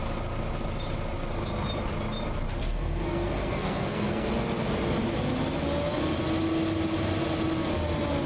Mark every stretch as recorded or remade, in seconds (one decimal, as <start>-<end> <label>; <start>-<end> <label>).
0.0-2.6 recorded; 2.6-4.3 remade; 4.3-8.3 recorded